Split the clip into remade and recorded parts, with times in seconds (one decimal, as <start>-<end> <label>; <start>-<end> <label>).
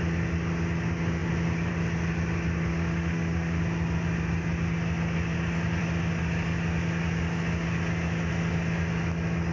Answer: 0.0-2.7 recorded; 2.7-3.6 remade; 3.6-9.5 recorded